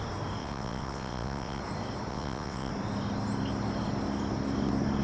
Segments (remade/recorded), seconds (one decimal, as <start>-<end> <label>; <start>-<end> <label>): 0.0-0.4 recorded; 0.4-1.6 remade; 1.6-2.1 recorded; 2.1-2.7 remade; 2.7-5.0 recorded